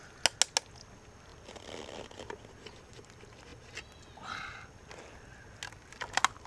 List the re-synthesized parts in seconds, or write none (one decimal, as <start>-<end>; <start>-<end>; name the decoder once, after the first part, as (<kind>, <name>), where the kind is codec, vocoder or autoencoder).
none